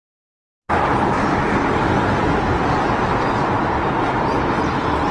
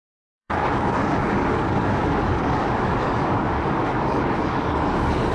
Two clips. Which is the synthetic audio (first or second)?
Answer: second